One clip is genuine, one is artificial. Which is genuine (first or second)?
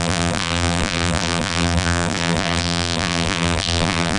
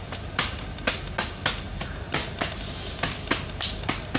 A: second